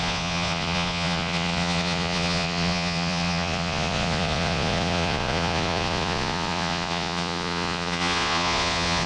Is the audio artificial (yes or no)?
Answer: yes